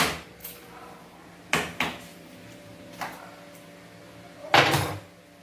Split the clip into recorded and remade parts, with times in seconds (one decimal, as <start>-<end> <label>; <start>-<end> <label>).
0.0-0.4 recorded; 0.4-1.2 remade; 1.2-2.1 recorded; 2.1-2.9 remade; 2.9-5.4 recorded